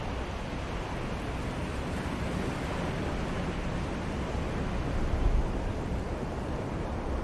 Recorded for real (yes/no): yes